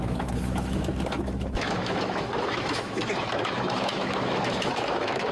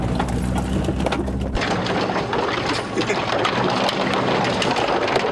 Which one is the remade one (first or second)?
first